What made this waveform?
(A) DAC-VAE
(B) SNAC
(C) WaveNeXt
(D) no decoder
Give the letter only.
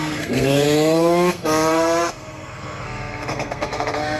B